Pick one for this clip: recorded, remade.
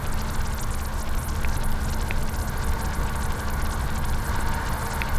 recorded